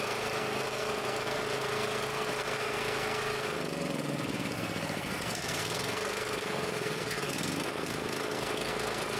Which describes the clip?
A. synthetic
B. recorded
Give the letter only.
A